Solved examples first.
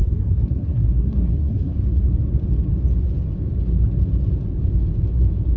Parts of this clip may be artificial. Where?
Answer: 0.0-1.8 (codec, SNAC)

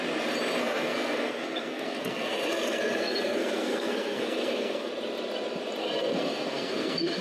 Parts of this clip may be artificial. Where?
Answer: 0.6-4.9 (codec, SNAC); 5.8-7.2

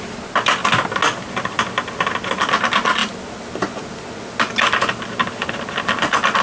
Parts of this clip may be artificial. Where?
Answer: none

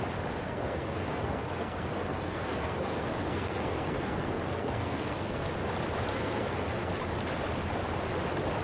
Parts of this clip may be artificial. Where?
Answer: 0.4-5.5 (codec, SNAC); 6.1-6.9

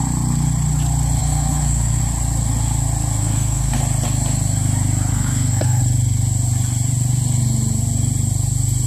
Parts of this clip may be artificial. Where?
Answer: 1.2-2.0 (codec, SNAC); 3.2-3.8; 5.1-5.8

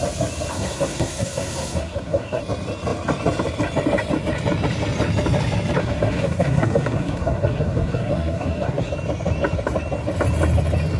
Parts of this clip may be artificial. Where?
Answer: 0.5-2.4 (codec, SNAC); 5.8-8.9

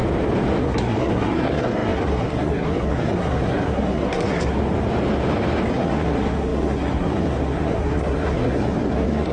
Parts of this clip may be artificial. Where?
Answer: 0.6-4.6 (codec, SNAC); 5.7-9.3

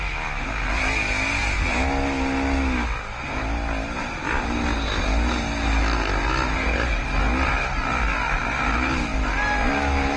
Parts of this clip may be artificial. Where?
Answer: none